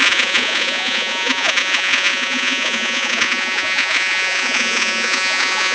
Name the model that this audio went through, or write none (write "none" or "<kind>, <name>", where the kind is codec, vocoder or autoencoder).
vocoder, Vocos